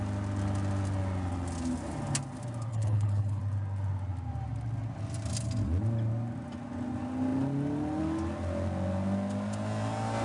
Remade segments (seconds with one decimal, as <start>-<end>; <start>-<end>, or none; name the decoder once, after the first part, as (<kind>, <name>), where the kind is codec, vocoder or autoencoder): 2.7-3.4 (codec, HILCodec)

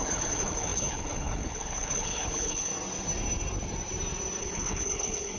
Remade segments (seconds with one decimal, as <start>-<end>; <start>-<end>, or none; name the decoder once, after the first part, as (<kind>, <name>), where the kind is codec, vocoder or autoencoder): 0.0-2.7 (codec, HILCodec); 4.4-5.4

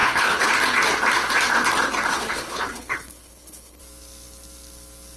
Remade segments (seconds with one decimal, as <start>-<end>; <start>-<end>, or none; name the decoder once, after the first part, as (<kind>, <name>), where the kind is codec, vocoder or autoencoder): 0.0-0.5 (codec, HILCodec); 2.1-3.8